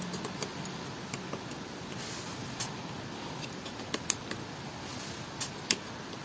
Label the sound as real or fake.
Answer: real